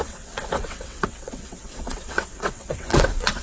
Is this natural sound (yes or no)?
no